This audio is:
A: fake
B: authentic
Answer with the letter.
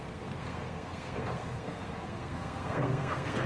A